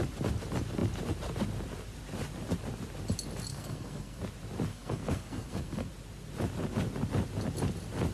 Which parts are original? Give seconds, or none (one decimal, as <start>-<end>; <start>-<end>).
0.0-3.5; 4.2-4.7; 5.9-8.1